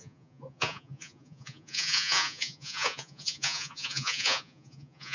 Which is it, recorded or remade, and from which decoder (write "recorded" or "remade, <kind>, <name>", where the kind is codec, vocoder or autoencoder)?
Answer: remade, vocoder, Vocos